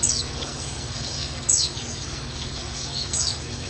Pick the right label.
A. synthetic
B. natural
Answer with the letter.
A